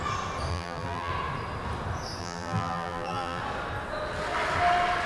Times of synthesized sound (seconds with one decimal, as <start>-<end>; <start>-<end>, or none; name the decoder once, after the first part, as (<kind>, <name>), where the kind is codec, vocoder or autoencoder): 0.5-1.1 (vocoder, BigVGAN v2); 2.2-3.4